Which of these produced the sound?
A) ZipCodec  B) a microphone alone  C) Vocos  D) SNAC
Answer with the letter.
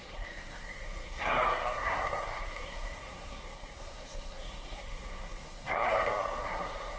D